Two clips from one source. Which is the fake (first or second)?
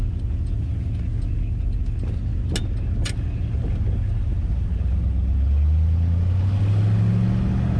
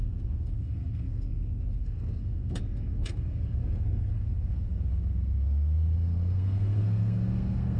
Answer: second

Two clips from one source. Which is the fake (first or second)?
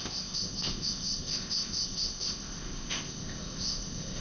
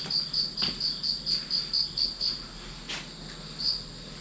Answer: first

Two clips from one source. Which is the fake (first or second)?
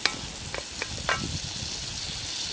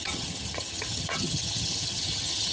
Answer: second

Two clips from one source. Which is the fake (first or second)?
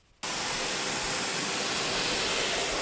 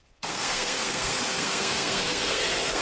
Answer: second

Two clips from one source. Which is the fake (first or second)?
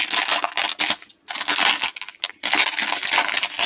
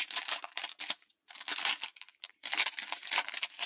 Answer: second